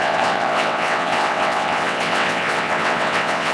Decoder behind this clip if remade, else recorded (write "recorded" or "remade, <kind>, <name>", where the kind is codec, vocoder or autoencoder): remade, vocoder, WaveNeXt